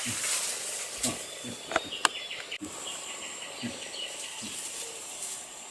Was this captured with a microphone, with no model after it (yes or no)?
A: yes